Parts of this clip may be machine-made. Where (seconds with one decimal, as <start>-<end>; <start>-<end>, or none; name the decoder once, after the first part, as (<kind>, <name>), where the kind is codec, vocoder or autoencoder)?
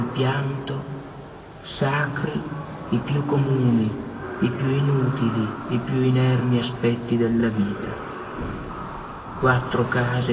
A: 1.6-4.6 (codec, DAC); 7.4-8.7